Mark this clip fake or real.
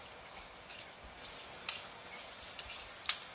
real